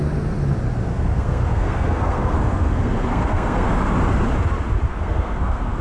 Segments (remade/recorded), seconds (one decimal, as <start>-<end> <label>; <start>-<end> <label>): 0.0-0.9 recorded; 0.9-3.7 remade; 3.7-4.9 recorded; 4.9-5.8 remade